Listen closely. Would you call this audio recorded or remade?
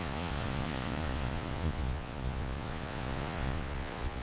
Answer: remade